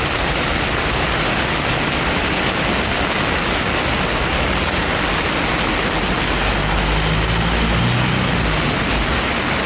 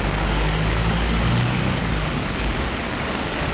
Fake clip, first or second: second